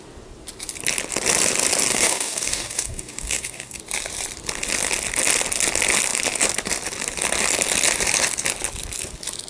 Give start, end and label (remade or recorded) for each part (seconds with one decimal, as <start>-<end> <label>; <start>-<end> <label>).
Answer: 0.0-1.9 recorded; 1.9-3.8 remade; 3.8-9.5 recorded